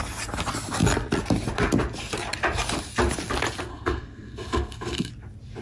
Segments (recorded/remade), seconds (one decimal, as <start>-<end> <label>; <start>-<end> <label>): 0.0-3.7 recorded; 3.7-5.1 remade; 5.1-5.6 recorded